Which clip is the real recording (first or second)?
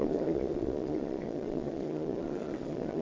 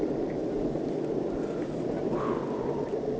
second